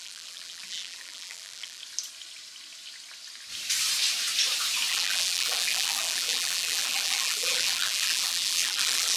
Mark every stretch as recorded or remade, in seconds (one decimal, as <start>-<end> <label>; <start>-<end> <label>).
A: 0.0-1.8 remade; 1.8-4.9 recorded; 4.9-9.2 remade